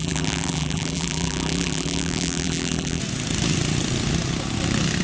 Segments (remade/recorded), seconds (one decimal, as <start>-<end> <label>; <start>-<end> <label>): 0.0-3.0 remade; 3.0-5.0 recorded